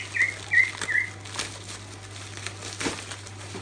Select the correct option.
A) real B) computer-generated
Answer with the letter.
A